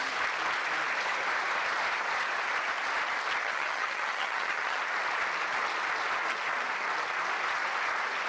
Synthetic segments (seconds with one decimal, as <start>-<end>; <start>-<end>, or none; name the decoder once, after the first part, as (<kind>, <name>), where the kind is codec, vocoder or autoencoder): 3.4-4.8 (vocoder, HiFi-GAN)